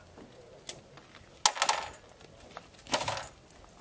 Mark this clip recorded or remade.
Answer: recorded